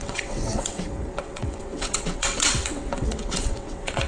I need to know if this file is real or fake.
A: fake